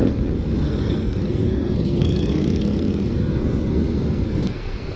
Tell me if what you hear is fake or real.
fake